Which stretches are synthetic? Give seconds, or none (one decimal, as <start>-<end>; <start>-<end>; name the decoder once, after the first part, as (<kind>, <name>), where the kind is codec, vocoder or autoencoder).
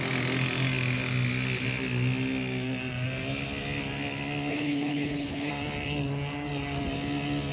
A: 4.5-5.5 (codec, HILCodec)